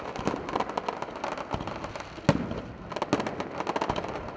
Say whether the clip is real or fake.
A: real